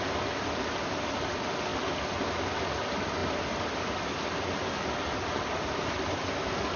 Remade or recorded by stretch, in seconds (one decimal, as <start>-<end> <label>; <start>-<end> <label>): 0.0-6.8 recorded